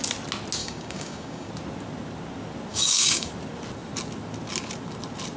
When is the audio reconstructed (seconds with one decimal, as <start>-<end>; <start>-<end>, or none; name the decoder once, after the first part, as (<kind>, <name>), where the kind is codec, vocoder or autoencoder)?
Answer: 0.6-1.5 (codec, DAC); 2.7-3.3